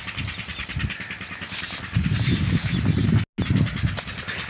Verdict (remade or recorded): recorded